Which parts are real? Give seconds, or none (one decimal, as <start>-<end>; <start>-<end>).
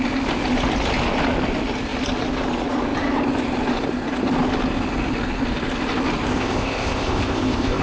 0.0-6.3